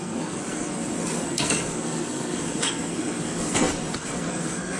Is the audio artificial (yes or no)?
yes